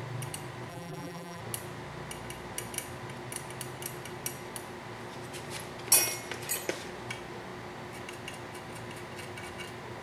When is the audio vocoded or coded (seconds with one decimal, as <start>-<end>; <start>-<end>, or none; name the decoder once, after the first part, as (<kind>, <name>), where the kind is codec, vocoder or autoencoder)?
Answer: 0.7-1.4 (vocoder, BigVGAN v2)